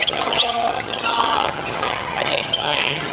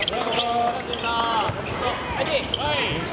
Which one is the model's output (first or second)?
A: first